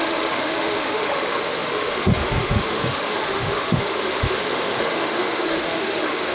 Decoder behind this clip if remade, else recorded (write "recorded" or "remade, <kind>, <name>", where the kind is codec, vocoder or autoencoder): remade, autoencoder, DAC-VAE